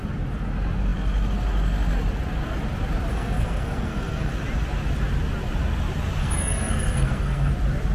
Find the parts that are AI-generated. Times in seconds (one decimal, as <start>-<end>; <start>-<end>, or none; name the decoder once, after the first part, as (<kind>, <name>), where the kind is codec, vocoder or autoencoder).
3.1-4.3 (codec, SNAC); 6.2-7.5